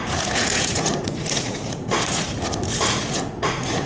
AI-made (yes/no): yes